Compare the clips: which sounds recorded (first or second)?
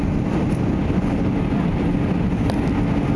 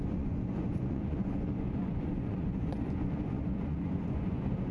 first